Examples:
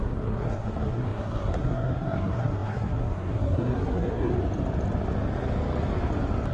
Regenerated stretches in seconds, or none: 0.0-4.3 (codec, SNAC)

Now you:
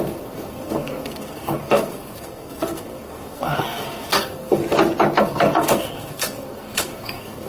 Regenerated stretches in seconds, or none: 0.0-4.6 (codec, SNAC); 5.2-7.5